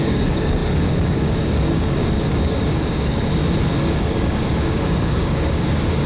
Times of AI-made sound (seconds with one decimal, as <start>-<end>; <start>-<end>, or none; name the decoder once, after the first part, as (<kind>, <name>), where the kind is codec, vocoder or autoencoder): 0.0-3.4 (codec, DAC); 4.0-6.1